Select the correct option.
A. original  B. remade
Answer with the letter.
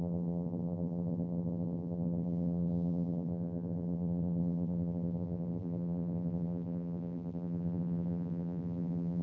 B